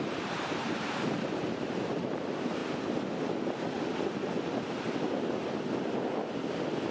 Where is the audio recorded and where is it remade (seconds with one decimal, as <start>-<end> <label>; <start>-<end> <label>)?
0.0-2.6 remade; 2.6-6.9 recorded